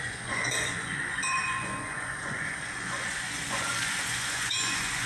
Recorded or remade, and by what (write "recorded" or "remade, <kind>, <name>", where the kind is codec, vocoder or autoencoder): remade, vocoder, Vocos